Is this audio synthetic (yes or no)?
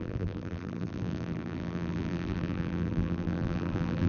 yes